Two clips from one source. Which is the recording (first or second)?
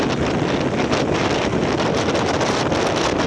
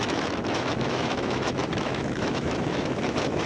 first